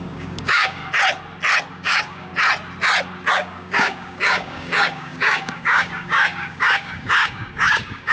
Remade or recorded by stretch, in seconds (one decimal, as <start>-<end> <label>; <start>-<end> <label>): 0.0-0.8 remade; 0.8-1.7 recorded; 1.7-2.3 remade; 2.3-3.3 recorded; 3.3-8.1 remade